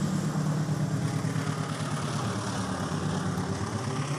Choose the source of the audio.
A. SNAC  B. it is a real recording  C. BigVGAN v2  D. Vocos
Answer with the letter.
B